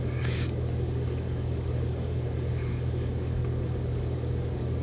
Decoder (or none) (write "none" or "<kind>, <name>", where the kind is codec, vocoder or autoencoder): codec, DAC